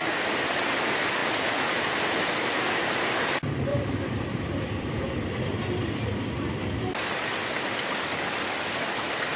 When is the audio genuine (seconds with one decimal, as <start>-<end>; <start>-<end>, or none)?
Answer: 0.0-3.7; 6.4-9.4